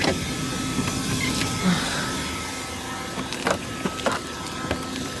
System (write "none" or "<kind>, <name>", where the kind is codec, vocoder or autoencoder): none